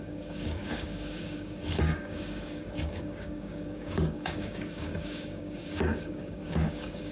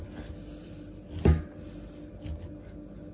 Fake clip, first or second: first